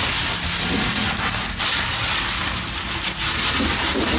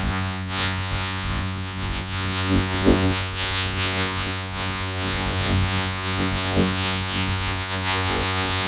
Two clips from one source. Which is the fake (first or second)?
second